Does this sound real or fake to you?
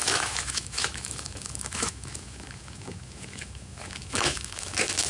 fake